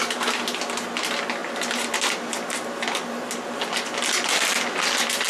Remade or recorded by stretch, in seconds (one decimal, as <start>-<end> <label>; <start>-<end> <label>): 0.0-5.3 recorded